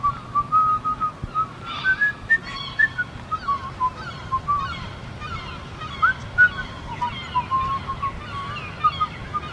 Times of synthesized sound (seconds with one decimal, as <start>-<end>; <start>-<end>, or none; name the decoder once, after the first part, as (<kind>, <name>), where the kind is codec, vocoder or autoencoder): none